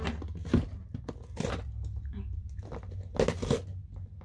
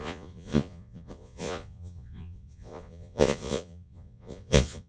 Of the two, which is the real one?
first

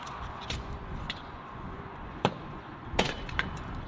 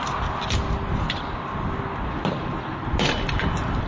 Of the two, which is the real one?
second